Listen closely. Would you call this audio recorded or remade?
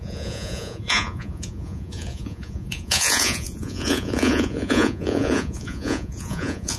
remade